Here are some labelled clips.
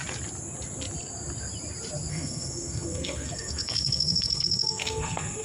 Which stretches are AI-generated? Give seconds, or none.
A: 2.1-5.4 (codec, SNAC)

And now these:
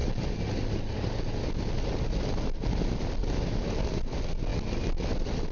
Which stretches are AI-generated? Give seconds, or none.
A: none

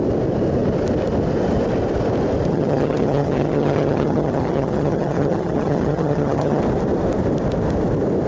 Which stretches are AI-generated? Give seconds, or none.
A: 2.5-6.6 (vocoder, HiFi-GAN)